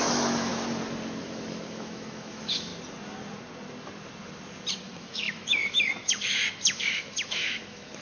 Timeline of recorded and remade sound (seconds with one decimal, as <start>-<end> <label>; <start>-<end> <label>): 0.0-0.5 remade; 0.5-1.2 recorded; 1.2-2.7 remade; 2.7-4.8 recorded; 4.8-8.0 remade